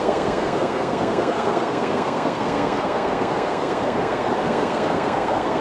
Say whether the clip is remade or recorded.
remade